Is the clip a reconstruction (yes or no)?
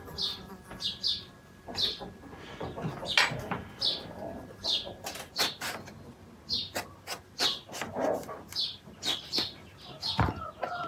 no